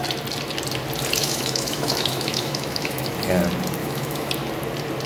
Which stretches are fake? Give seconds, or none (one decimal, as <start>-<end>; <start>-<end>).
1.2-3.1; 3.8-4.3